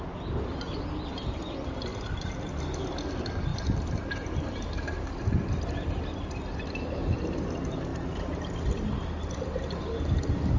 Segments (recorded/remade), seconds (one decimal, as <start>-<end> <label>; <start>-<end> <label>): 0.0-1.9 recorded; 1.9-2.6 remade; 2.6-3.5 recorded; 3.5-4.4 remade; 4.4-7.9 recorded; 7.9-8.5 remade; 8.5-10.6 recorded